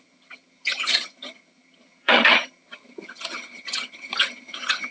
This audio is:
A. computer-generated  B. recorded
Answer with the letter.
A